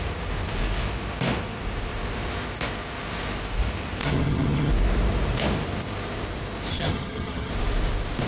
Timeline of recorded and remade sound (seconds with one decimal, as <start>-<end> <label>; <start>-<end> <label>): 0.0-4.0 recorded; 4.0-4.7 remade; 4.7-6.7 recorded; 6.7-7.5 remade; 7.5-8.3 recorded